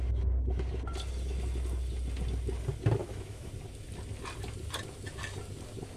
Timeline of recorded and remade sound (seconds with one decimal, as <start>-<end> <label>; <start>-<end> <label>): 0.0-3.0 recorded; 3.0-3.5 remade; 3.5-6.0 recorded